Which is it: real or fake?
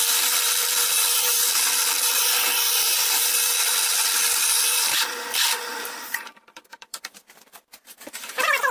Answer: fake